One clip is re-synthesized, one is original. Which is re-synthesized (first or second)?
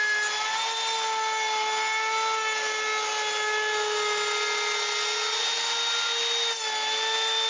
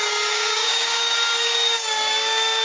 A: second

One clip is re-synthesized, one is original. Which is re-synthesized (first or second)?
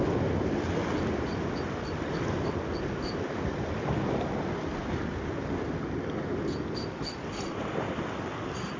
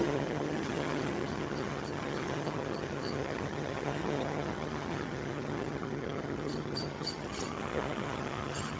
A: second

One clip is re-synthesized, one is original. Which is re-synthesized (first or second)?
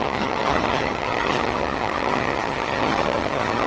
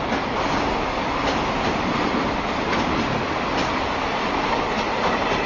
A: first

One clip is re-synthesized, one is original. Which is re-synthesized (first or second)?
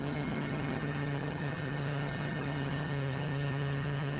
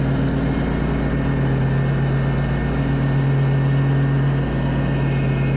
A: first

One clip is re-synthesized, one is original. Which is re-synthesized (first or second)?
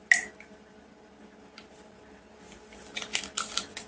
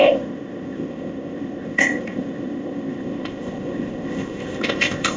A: second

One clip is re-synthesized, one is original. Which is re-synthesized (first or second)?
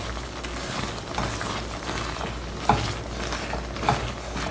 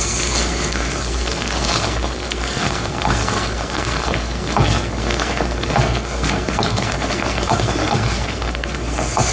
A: second